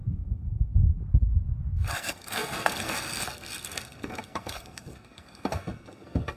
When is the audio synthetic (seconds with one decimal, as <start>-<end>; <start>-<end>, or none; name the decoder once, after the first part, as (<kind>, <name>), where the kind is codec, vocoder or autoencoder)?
0.0-0.7 (codec, SNAC); 1.7-6.4